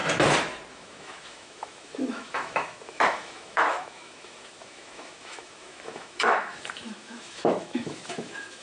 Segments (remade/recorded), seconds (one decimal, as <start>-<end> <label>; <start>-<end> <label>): 0.0-0.7 recorded; 0.7-8.6 remade

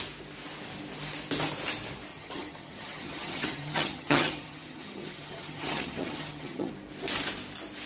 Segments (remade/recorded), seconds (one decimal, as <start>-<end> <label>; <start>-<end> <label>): 0.0-2.1 recorded; 2.1-6.7 remade; 6.7-7.9 recorded

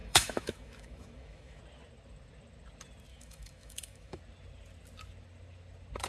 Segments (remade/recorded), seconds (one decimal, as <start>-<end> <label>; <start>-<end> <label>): 0.0-1.6 remade; 1.6-3.1 recorded; 3.1-4.2 remade; 4.2-6.1 recorded

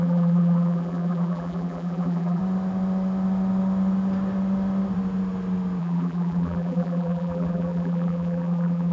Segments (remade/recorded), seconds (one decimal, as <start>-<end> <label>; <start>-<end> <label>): 0.0-2.4 remade; 2.4-5.8 recorded; 5.8-8.9 remade

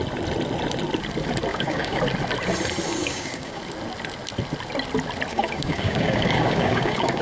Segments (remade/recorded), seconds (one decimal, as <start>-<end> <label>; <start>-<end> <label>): 0.0-1.5 recorded; 1.5-2.0 remade; 2.0-3.0 recorded; 3.0-3.6 remade; 3.6-5.3 recorded; 5.3-7.2 remade

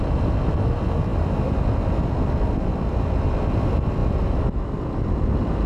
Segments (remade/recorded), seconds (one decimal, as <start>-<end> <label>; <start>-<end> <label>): 0.0-5.7 recorded

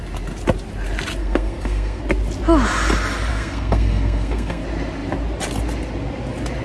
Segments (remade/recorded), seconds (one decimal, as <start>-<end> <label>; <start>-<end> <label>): 0.0-1.2 recorded; 1.2-2.0 remade; 2.0-3.3 recorded; 3.3-4.6 remade; 4.6-6.6 recorded

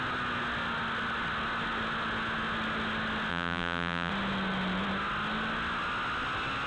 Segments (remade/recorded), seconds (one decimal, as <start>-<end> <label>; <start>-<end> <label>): 0.0-3.3 recorded; 3.3-4.1 remade; 4.1-6.7 recorded